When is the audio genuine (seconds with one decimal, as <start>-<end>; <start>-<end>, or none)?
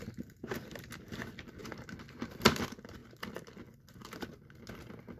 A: 0.0-5.2